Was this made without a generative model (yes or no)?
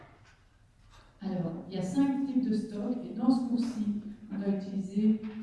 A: yes